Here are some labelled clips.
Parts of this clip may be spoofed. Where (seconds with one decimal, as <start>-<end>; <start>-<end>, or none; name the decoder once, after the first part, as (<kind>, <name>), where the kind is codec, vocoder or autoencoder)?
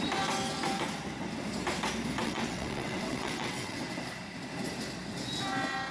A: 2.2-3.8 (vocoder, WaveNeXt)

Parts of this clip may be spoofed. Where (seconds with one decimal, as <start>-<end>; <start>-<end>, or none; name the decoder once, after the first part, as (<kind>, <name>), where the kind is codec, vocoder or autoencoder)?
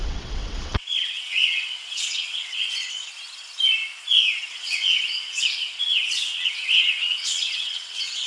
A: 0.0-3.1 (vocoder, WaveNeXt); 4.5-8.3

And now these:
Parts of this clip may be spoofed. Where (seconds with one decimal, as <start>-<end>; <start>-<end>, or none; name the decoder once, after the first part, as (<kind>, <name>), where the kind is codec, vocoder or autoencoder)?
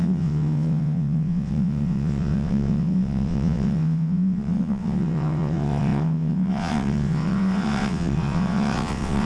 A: 0.0-9.3 (vocoder, WaveNeXt)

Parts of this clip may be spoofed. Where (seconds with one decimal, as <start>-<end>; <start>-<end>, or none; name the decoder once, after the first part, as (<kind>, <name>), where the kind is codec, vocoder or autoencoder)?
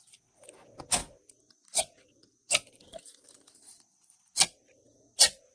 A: none